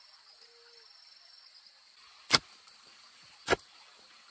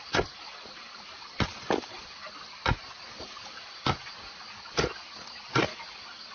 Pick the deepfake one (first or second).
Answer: second